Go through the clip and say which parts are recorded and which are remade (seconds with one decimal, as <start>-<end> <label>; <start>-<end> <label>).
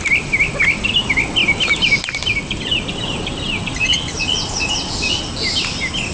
0.0-6.1 recorded